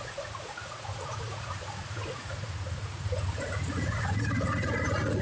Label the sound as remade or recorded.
remade